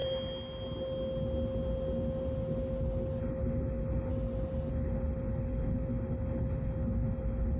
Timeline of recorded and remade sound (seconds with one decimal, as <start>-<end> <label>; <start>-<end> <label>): 0.0-3.2 recorded; 3.2-4.1 remade; 4.1-4.7 recorded; 4.7-7.6 remade